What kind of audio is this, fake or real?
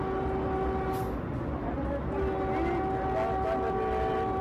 real